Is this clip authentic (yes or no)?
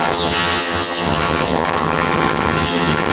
no